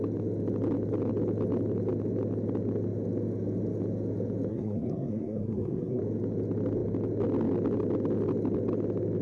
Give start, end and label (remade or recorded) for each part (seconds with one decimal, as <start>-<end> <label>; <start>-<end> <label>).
0.0-4.5 recorded; 4.5-6.0 remade; 6.0-9.2 recorded